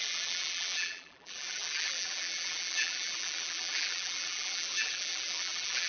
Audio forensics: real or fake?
fake